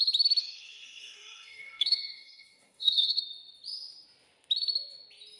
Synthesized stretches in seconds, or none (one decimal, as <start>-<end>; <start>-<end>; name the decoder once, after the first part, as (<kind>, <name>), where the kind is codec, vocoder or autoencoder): 0.4-3.2 (codec, DAC)